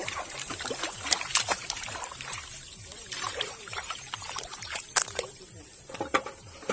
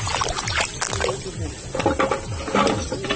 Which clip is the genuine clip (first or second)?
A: second